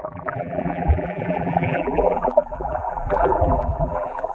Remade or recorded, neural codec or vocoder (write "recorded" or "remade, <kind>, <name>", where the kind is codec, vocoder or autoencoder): remade, vocoder, BigVGAN v2